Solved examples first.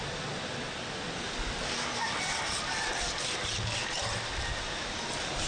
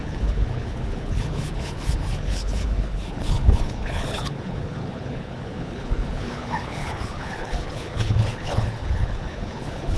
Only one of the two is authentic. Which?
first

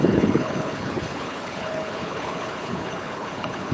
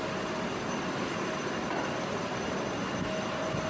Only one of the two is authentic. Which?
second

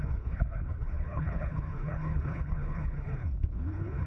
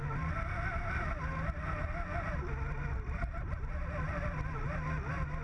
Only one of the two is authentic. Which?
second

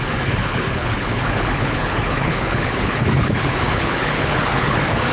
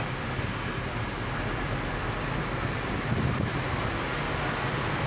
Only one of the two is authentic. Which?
second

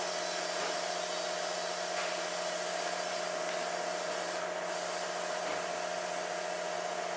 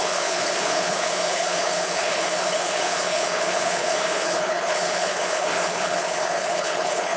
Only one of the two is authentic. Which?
first